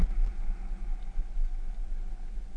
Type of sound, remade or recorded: recorded